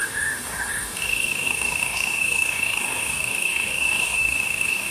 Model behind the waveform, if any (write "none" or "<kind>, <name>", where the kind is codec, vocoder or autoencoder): codec, DAC